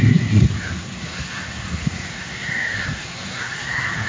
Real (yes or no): no